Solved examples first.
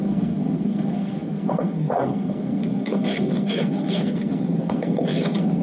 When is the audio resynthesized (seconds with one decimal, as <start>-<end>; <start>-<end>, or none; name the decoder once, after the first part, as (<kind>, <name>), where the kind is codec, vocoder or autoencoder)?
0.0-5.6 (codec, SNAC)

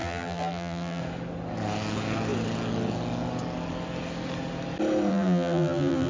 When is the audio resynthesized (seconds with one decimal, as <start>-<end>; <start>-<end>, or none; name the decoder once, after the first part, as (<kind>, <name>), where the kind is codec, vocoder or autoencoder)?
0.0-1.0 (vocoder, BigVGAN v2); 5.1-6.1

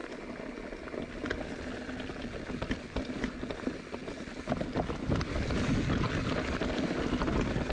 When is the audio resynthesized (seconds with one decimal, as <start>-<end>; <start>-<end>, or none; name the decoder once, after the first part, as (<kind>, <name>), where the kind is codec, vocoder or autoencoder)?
none

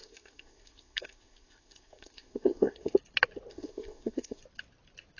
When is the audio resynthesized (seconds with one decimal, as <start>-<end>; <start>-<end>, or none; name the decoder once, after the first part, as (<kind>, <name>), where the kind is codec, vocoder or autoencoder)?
0.0-2.9 (codec, SNAC); 3.5-4.4

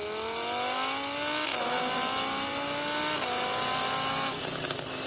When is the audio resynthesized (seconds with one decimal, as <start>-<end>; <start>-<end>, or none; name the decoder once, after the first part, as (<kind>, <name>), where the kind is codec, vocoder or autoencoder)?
none

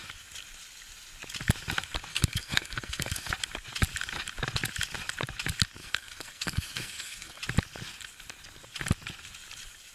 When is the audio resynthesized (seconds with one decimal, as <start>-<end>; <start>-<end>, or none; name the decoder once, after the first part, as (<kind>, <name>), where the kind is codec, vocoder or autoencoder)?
2.1-3.3 (codec, SNAC); 5.8-7.4

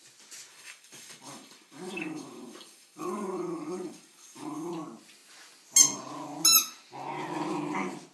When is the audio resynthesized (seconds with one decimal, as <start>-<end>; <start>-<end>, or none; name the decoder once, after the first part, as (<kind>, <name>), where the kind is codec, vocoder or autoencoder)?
0.5-4.7 (codec, DAC)

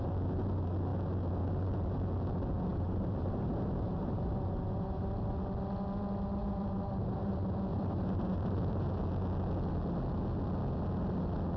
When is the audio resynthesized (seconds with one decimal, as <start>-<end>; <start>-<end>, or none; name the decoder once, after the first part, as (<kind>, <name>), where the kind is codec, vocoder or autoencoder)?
2.7-5.3 (vocoder, BigVGAN v2); 6.4-7.3; 7.7-9.0